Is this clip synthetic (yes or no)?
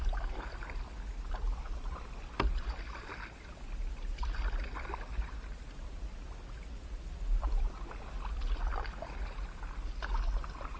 no